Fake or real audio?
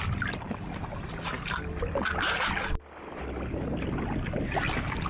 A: real